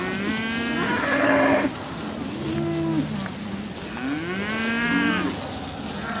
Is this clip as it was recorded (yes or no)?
yes